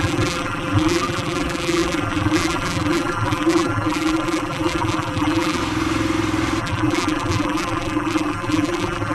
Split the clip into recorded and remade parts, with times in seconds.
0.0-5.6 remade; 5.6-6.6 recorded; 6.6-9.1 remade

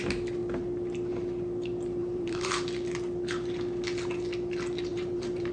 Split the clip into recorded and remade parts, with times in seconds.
0.0-2.0 recorded; 2.0-2.5 remade; 2.5-4.9 recorded; 4.9-5.5 remade

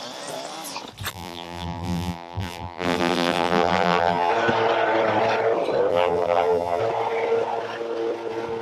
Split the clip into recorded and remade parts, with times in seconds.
0.0-1.1 recorded; 1.1-4.3 remade; 4.3-5.9 recorded; 5.9-6.8 remade; 6.8-8.6 recorded